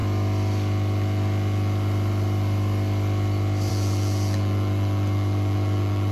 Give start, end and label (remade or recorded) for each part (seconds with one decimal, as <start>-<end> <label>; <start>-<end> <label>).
0.0-3.7 recorded; 3.7-6.1 remade